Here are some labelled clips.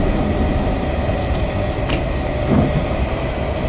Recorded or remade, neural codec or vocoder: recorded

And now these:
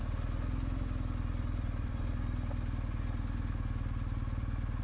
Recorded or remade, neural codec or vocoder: recorded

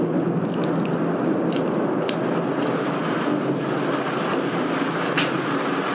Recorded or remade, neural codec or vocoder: recorded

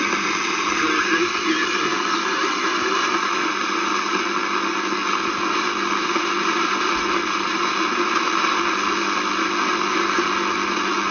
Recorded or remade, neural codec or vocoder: recorded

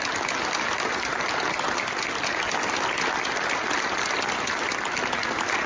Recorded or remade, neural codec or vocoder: recorded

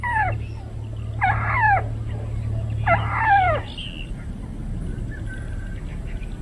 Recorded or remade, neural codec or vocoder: recorded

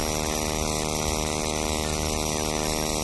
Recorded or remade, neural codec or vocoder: recorded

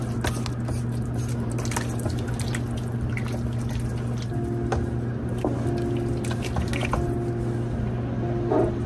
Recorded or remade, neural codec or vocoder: recorded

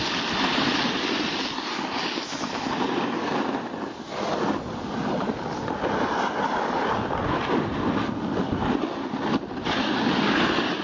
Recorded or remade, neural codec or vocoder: recorded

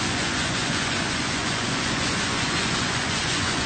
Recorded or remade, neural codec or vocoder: remade, vocoder, Vocos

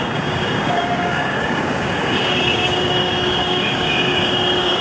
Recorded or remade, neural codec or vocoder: remade, codec, DAC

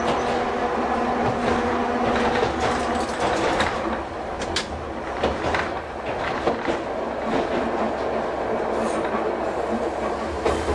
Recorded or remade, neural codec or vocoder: recorded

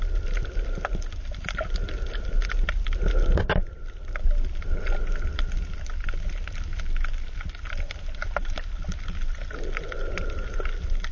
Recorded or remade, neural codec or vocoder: recorded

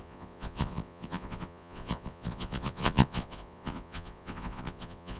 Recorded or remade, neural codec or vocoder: remade, vocoder, Vocos